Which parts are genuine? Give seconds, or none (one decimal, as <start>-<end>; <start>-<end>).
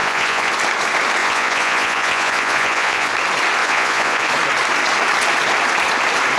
0.5-1.2; 3.1-3.6; 4.3-6.4